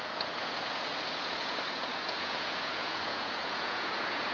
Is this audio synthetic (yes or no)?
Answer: yes